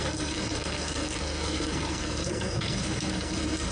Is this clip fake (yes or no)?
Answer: yes